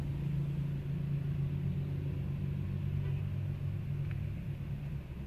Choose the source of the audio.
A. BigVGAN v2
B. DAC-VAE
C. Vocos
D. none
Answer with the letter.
D